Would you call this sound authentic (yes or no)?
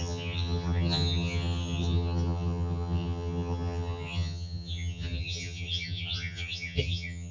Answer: no